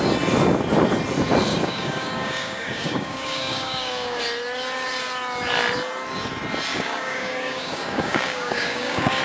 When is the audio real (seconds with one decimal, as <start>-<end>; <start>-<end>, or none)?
0.0-1.5; 4.2-6.7